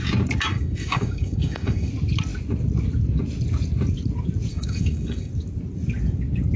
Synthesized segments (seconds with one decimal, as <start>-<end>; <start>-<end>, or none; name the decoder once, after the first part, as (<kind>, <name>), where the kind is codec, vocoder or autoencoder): 0.5-1.9 (codec, DAC); 4.5-5.3